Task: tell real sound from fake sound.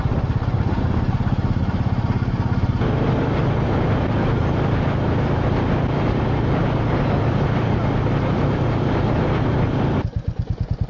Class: real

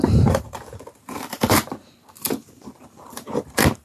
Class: fake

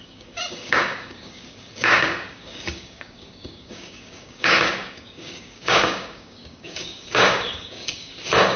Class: fake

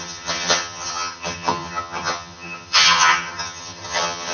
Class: fake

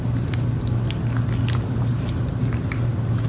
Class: real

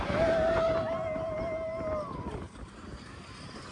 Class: real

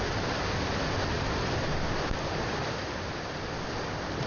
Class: real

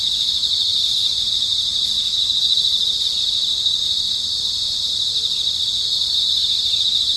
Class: real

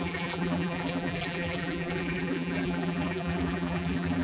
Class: fake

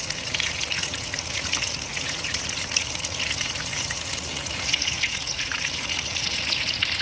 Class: fake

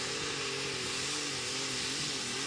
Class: real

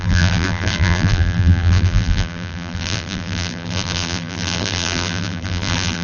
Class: fake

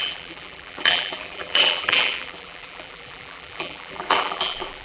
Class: fake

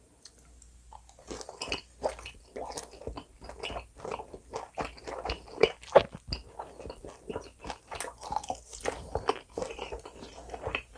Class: real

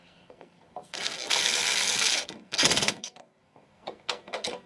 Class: fake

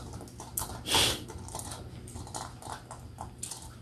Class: real